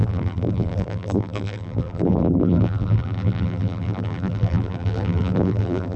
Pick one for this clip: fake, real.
fake